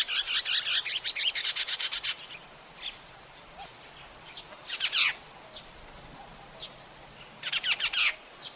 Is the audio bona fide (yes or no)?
yes